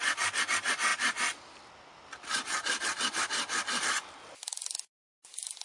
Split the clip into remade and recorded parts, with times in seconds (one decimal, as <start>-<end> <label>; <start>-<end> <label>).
0.0-5.6 recorded

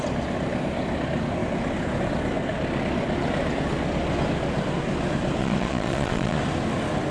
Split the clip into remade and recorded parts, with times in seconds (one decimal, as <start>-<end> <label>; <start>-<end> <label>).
0.0-5.4 recorded; 5.4-6.4 remade; 6.4-7.1 recorded

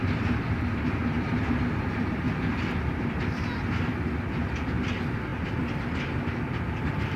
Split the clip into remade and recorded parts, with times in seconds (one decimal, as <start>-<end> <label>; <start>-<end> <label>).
0.0-7.2 recorded

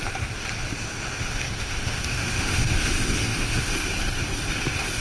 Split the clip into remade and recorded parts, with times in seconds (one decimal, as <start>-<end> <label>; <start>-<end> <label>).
0.0-1.2 recorded; 1.2-3.7 remade; 3.7-5.0 recorded

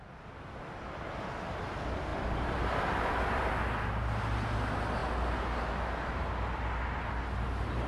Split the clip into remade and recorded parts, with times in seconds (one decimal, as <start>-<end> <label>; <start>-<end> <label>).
0.0-2.1 recorded; 2.1-3.5 remade; 3.5-7.9 recorded

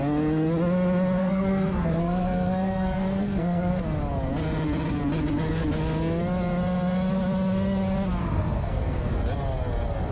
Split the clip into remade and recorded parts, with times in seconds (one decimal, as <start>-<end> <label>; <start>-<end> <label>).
0.0-1.2 recorded; 1.2-3.8 remade; 3.8-8.2 recorded; 8.2-9.1 remade; 9.1-10.1 recorded